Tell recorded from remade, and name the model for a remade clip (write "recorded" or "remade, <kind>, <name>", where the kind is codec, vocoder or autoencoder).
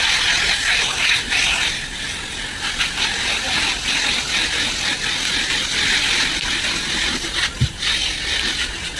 recorded